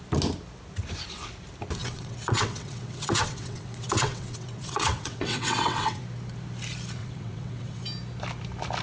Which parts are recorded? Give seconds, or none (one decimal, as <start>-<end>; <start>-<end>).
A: 0.0-1.8; 6.0-7.0; 7.8-8.8

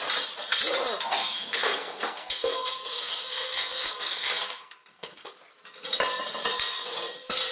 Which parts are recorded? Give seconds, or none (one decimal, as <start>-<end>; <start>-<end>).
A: 0.0-1.1; 5.3-7.5

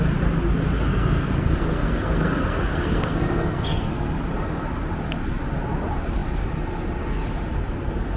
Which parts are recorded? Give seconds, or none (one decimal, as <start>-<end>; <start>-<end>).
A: 0.0-0.9; 4.1-8.2

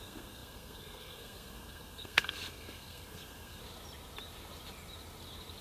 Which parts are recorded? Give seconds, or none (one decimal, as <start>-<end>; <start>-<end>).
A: 3.6-5.6

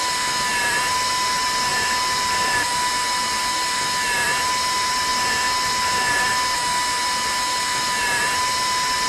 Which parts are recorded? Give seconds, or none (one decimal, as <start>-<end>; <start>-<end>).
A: 0.0-1.7; 2.9-9.1

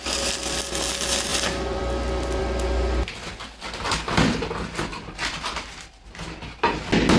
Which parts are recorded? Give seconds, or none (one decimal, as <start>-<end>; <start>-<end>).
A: 0.0-1.3; 1.8-4.9; 6.8-7.2

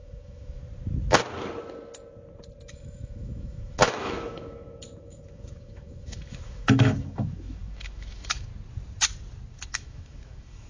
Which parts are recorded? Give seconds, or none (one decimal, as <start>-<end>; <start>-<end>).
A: 0.6-2.7; 8.5-9.5

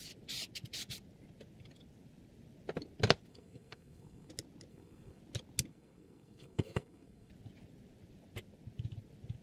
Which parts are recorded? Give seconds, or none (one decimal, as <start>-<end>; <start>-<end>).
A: 0.0-3.3; 4.3-4.7; 5.2-5.7; 7.3-9.4